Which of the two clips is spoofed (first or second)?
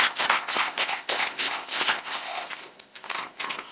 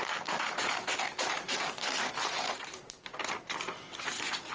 first